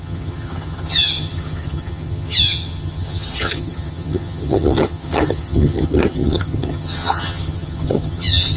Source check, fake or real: fake